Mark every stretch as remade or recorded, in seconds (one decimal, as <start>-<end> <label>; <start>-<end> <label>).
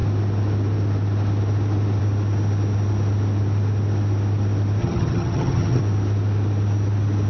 0.0-4.8 recorded; 4.8-5.8 remade; 5.8-7.3 recorded